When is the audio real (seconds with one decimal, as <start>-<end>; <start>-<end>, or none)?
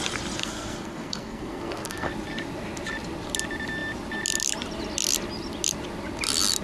0.0-0.4; 2.1-6.6